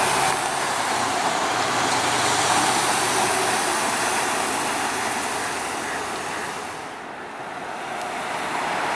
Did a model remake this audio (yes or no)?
no